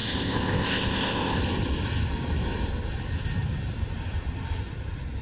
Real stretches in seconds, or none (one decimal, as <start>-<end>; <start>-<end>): 1.4-5.2